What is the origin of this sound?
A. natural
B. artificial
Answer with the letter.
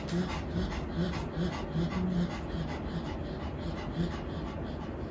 A